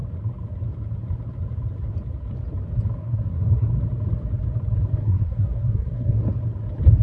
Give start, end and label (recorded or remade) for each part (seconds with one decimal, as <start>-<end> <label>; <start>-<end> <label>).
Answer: 0.0-3.0 recorded; 3.0-3.7 remade; 3.7-5.0 recorded; 5.0-6.2 remade; 6.2-7.0 recorded